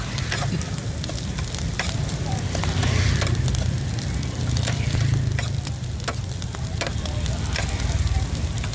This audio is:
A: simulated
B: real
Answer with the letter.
A